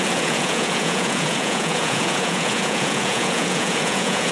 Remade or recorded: remade